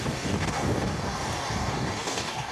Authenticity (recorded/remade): remade